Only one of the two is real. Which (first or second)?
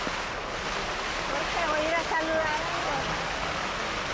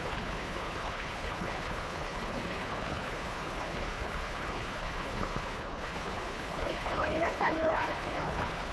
first